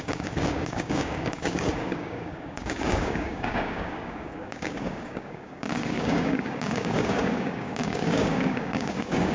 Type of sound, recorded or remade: remade